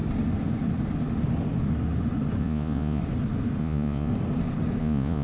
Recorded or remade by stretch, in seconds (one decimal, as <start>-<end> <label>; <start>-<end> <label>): 0.0-2.4 recorded; 2.4-3.0 remade; 3.0-3.6 recorded; 3.6-4.1 remade; 4.1-4.8 recorded; 4.8-5.2 remade